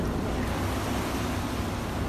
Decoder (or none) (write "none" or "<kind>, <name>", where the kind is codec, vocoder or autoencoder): none